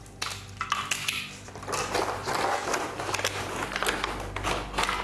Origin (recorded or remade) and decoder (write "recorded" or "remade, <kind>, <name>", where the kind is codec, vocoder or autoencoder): recorded